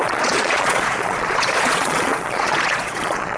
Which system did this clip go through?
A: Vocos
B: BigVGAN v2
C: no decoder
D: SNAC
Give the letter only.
A